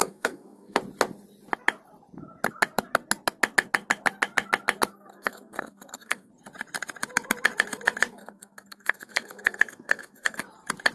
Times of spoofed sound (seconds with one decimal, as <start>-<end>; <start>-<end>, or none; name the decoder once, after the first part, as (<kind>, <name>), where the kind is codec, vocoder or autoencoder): 0.0-0.8 (codec, SNAC); 4.9-6.3; 8.1-10.4